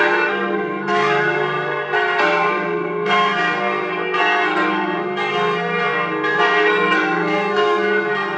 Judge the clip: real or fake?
fake